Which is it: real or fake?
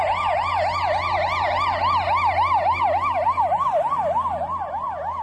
real